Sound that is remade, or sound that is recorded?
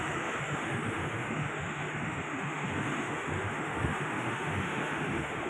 remade